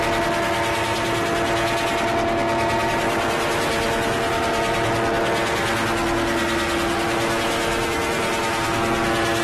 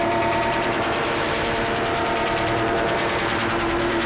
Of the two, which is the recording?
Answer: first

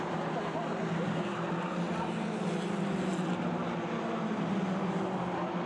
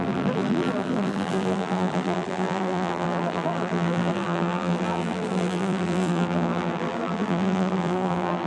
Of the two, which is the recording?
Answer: first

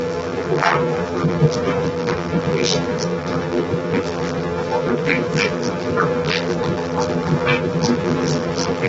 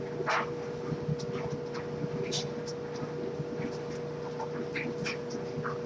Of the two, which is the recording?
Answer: second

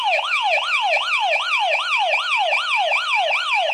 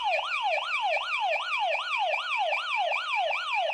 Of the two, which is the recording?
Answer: first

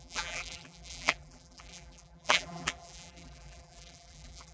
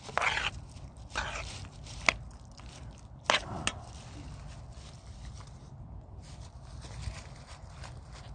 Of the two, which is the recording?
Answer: second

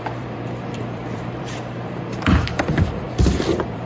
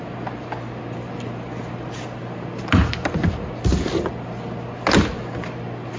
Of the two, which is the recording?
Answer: second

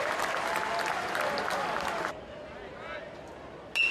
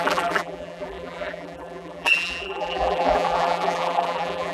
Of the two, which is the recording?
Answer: first